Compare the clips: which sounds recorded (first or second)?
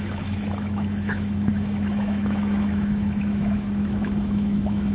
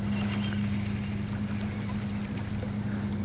second